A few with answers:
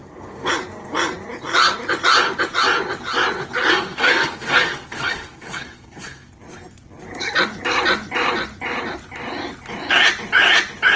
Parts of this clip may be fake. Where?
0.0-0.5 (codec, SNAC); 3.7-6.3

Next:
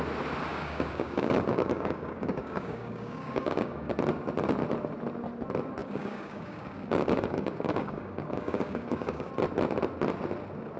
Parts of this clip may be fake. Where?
0.5-3.9 (codec, DAC); 5.8-9.3

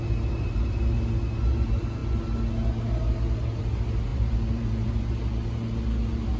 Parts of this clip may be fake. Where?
4.1-5.0 (vocoder, BigVGAN v2)

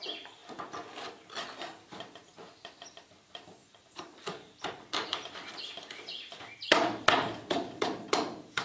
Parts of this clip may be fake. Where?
0.0-0.4 (vocoder, BigVGAN v2); 1.8-8.6